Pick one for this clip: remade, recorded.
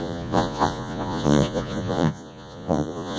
remade